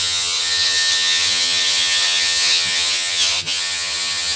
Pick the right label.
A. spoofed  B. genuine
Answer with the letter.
A